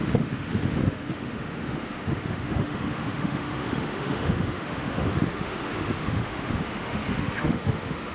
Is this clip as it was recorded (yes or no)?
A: no